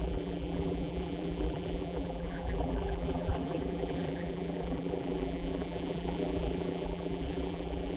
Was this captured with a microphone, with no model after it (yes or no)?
no